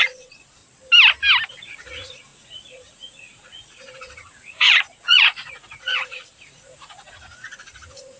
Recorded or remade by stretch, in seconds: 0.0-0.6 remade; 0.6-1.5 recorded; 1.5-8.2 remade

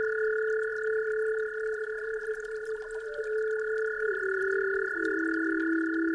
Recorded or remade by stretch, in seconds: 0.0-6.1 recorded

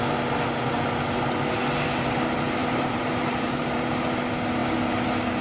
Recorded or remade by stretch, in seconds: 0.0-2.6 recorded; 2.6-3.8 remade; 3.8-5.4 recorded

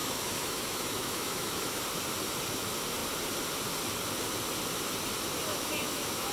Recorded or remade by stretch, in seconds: 0.0-1.8 remade; 1.8-5.5 recorded; 5.5-6.3 remade

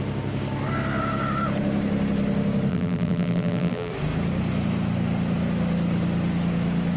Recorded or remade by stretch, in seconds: 0.0-2.7 recorded; 2.7-3.9 remade; 3.9-7.0 recorded

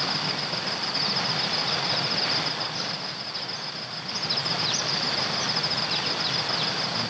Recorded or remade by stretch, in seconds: 0.0-7.1 recorded

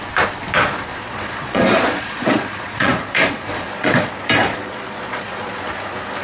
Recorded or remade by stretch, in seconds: 0.0-0.9 recorded; 0.9-4.1 remade; 4.1-4.5 recorded; 4.5-5.6 remade; 5.6-6.2 recorded